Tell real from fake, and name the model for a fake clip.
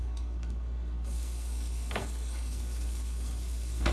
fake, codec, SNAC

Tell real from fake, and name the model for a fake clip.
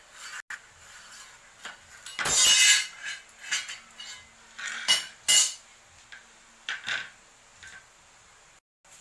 real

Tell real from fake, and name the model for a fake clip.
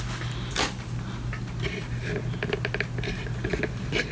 real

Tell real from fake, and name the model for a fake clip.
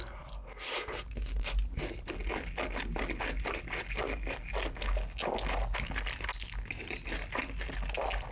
real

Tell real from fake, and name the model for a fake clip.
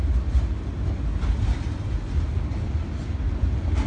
real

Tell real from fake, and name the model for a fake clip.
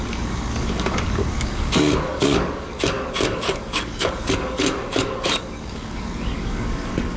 fake, codec, DAC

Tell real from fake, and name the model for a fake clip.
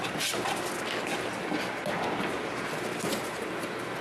real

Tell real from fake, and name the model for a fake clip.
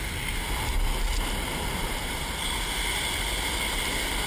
real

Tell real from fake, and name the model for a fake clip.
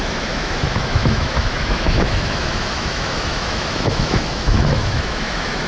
fake, autoencoder, DAC-VAE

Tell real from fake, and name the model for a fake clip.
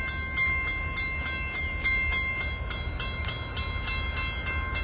real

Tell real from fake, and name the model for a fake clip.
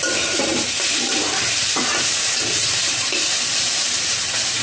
fake, vocoder, BigVGAN v2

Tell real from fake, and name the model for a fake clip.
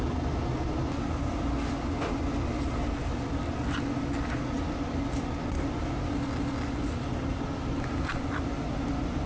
real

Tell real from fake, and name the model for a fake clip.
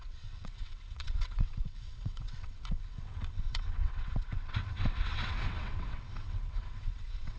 fake, vocoder, WaveNeXt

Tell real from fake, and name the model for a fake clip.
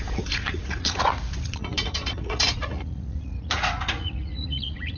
fake, vocoder, Vocos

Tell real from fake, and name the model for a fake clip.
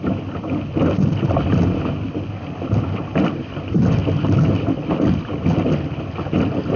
real